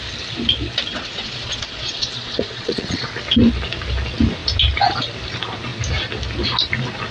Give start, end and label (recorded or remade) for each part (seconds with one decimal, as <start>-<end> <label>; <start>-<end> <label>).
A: 0.0-0.9 recorded; 0.9-3.1 remade; 3.1-7.1 recorded